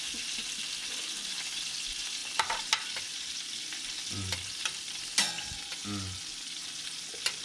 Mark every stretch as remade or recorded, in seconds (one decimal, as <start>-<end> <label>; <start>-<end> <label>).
0.0-7.4 recorded